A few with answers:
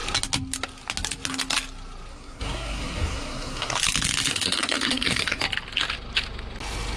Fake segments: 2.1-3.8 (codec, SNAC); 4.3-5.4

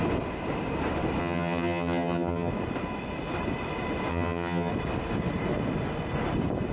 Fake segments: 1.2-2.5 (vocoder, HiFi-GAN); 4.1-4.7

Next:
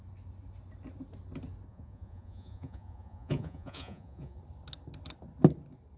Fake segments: 1.7-4.4 (vocoder, Vocos)

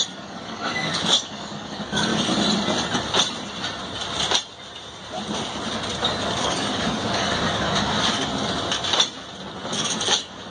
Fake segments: 0.0-2.1 (codec, DAC); 6.2-8.3; 9.7-10.5